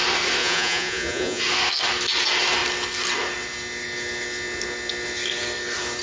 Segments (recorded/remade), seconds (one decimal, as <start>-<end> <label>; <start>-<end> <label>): 0.0-0.4 recorded; 0.4-1.4 remade; 1.4-6.0 recorded